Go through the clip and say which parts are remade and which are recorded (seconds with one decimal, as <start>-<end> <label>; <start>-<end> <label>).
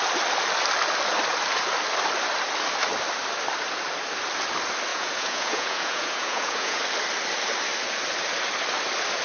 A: 0.0-4.9 recorded; 4.9-6.8 remade; 6.8-9.2 recorded